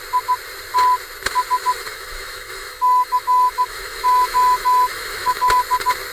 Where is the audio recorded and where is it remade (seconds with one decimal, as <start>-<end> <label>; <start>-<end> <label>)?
0.0-1.9 recorded; 1.9-5.6 remade; 5.6-6.1 recorded

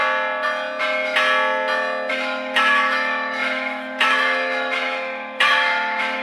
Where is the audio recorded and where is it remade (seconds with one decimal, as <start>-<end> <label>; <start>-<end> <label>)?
0.0-2.1 recorded; 2.1-6.2 remade